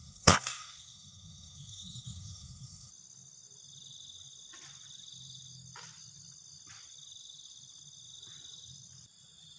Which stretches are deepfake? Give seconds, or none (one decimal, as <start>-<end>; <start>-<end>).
0.0-2.9